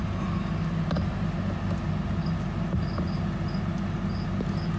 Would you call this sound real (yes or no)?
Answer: yes